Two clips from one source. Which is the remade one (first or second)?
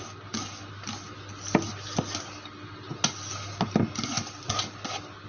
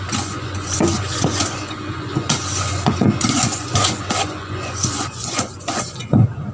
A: second